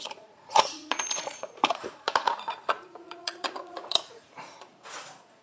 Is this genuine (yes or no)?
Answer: no